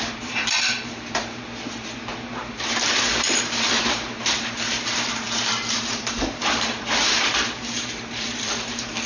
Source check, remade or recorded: remade